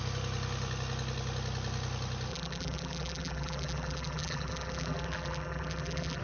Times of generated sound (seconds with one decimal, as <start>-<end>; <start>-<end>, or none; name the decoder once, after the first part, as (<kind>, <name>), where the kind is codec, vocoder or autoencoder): 2.3-6.2 (vocoder, BigVGAN v2)

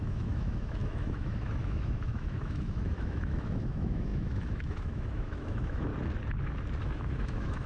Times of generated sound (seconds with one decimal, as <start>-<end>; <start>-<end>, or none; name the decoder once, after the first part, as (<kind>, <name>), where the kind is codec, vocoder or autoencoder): 0.0-5.9 (autoencoder, DAC-VAE); 6.8-7.7